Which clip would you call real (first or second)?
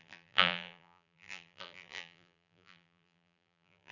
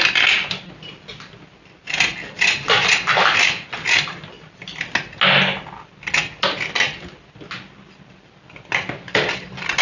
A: second